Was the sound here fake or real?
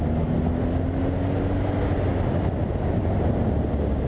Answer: real